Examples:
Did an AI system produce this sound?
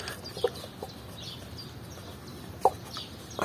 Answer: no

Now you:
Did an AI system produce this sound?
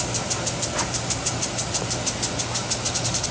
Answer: no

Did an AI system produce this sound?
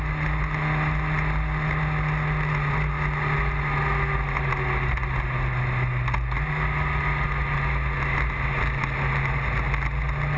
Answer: no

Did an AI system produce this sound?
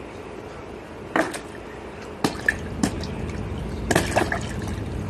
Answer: no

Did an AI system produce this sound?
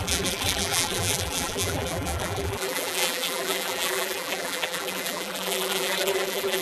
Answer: yes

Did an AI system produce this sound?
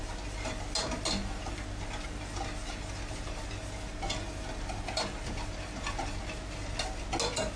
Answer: no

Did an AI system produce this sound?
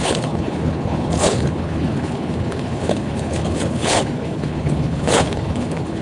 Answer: yes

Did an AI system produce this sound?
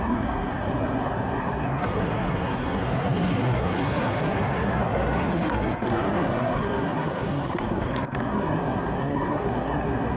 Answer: yes